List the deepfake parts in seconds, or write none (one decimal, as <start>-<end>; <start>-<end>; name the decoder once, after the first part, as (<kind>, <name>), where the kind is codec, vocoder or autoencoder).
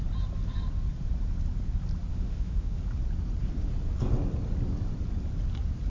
2.1-2.8 (autoencoder, DAC-VAE)